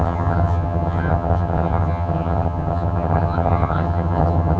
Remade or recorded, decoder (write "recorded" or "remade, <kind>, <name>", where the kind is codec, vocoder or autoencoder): remade, vocoder, HiFi-GAN